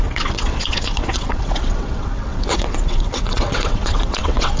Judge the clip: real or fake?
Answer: fake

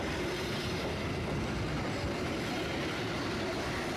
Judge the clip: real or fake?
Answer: real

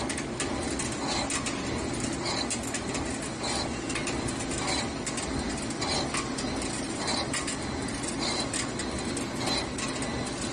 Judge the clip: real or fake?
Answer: real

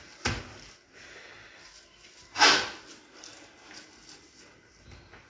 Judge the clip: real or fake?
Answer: real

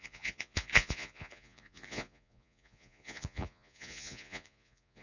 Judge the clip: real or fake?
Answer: fake